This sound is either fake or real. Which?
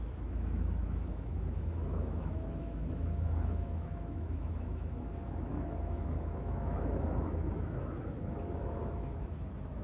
fake